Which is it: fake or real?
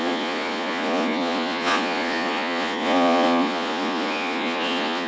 fake